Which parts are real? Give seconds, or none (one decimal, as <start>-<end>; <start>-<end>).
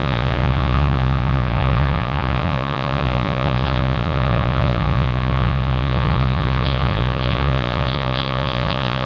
none